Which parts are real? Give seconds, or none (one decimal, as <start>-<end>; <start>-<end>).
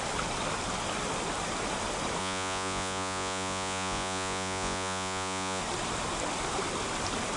0.0-2.2; 5.6-7.4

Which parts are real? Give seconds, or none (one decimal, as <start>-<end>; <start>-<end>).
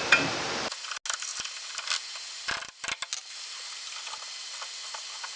0.0-5.4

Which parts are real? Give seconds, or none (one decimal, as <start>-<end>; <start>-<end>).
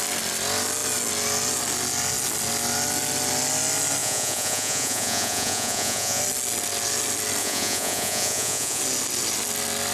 0.0-4.0; 6.2-7.4; 8.8-9.9